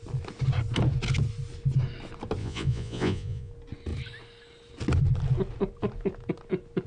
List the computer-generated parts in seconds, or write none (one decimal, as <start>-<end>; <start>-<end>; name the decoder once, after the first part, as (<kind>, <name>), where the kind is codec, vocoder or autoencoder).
2.4-3.5 (vocoder, Vocos)